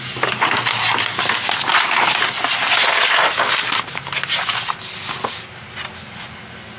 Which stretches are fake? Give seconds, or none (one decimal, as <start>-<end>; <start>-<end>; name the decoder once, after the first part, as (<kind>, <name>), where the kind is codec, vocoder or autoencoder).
none